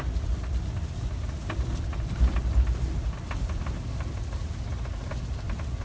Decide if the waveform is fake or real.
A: real